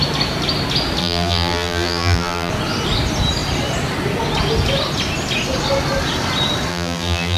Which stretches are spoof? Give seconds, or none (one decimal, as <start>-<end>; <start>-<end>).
1.0-2.5; 6.7-7.4